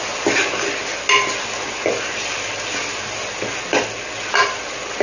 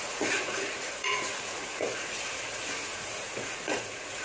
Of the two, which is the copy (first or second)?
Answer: second